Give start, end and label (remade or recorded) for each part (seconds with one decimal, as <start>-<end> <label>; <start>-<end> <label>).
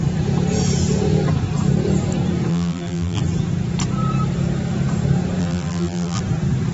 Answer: 0.0-2.5 recorded; 2.5-3.2 remade; 3.2-5.4 recorded; 5.4-6.2 remade; 6.2-6.7 recorded